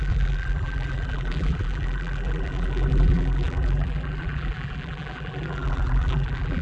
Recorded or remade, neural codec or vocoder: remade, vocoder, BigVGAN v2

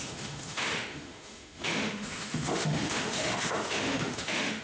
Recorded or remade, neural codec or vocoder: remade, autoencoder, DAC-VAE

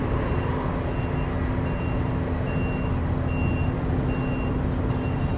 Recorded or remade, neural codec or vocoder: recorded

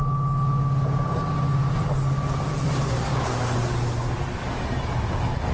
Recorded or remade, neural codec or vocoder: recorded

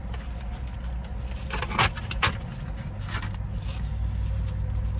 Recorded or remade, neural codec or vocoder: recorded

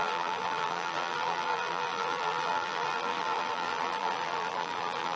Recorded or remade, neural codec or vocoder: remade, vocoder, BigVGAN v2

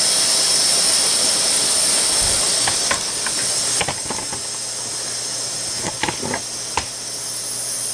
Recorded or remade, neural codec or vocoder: recorded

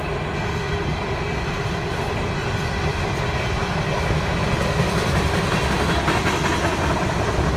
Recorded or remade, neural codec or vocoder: recorded